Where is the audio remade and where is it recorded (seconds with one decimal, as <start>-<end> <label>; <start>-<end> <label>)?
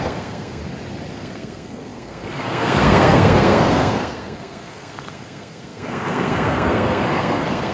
0.0-0.6 remade; 0.6-1.1 recorded; 1.1-7.7 remade